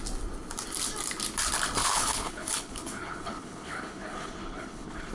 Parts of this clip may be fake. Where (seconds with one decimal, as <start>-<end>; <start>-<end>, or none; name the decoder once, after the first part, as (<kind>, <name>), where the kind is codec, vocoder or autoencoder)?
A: 1.8-5.1 (codec, HILCodec)